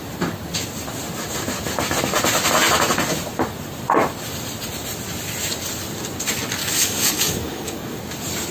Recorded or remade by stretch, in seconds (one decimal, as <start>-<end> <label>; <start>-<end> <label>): 0.0-6.6 recorded; 6.6-8.0 remade; 8.0-8.5 recorded